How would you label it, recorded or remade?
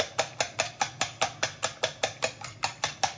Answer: recorded